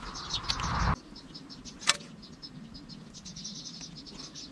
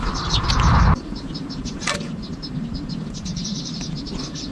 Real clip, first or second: first